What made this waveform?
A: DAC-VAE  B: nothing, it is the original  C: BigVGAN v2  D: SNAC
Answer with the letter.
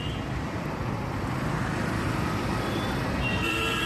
C